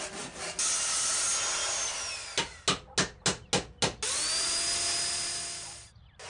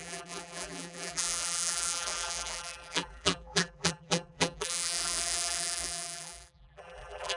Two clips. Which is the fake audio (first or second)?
second